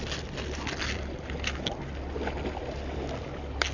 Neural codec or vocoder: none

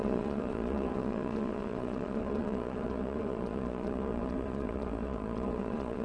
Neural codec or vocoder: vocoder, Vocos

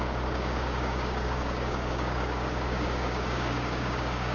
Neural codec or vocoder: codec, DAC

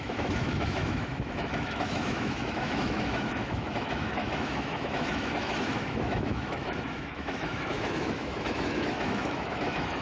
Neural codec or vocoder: autoencoder, DAC-VAE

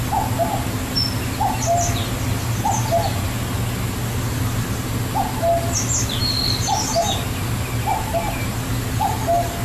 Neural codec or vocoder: none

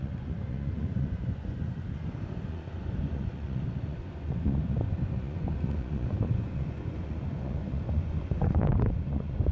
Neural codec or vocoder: vocoder, Vocos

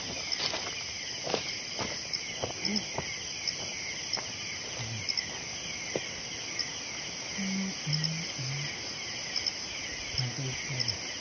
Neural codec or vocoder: none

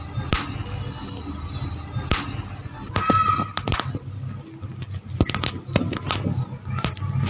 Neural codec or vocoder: none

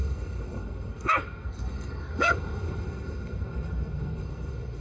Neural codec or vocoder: codec, SNAC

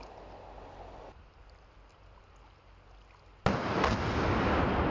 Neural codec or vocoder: none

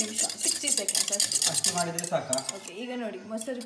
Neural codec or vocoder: none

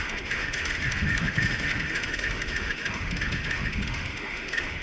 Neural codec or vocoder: autoencoder, DAC-VAE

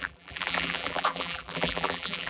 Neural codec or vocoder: vocoder, BigVGAN v2